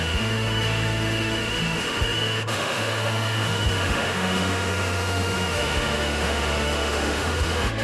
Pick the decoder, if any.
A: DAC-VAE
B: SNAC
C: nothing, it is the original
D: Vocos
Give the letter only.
A